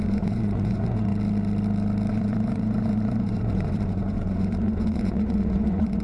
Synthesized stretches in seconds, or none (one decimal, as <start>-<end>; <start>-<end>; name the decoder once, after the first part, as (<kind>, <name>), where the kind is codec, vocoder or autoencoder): 0.0-1.1 (vocoder, Vocos); 2.1-6.0